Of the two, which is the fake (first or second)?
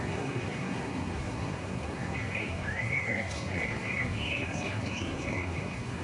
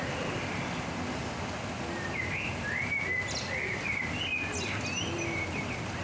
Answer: first